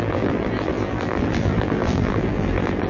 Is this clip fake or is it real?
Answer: fake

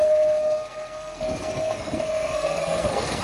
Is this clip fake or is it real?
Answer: fake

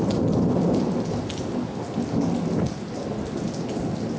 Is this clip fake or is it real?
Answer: real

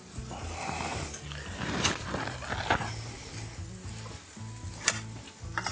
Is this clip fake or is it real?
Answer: fake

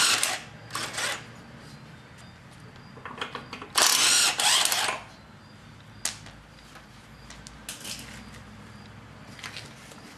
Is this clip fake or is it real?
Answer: real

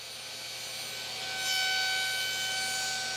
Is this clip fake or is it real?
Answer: real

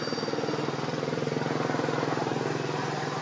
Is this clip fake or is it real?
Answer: real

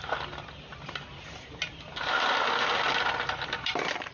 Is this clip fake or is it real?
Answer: real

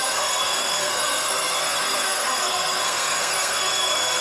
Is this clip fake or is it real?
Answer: fake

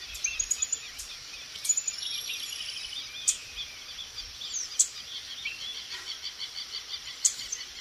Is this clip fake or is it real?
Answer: real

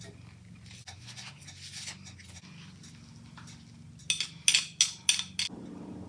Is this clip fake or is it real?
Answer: real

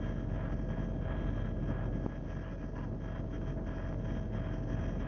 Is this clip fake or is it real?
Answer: real